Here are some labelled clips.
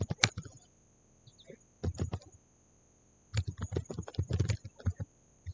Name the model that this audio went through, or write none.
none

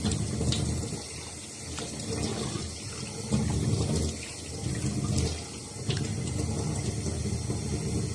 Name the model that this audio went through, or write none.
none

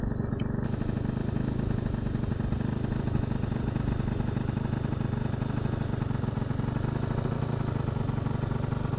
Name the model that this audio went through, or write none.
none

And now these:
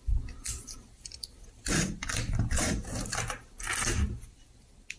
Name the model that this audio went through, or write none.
vocoder, BigVGAN v2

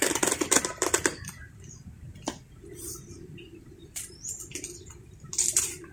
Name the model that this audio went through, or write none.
vocoder, BigVGAN v2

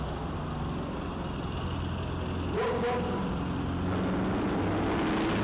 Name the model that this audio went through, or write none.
none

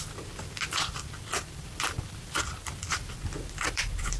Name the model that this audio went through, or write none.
vocoder, BigVGAN v2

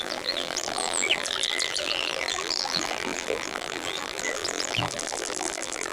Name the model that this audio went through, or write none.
vocoder, BigVGAN v2